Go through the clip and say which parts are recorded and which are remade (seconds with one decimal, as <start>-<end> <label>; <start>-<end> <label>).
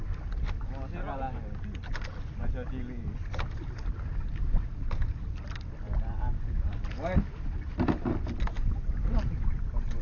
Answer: 0.0-10.0 recorded